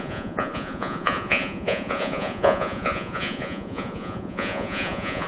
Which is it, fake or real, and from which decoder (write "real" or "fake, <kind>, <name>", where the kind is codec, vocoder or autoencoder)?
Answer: fake, vocoder, Vocos